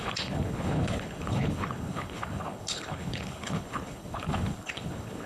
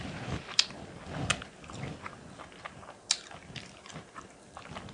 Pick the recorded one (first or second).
second